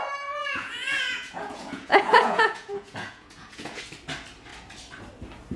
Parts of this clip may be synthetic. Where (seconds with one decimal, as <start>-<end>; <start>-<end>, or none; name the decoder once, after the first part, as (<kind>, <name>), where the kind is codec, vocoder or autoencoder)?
0.4-3.8 (vocoder, Vocos)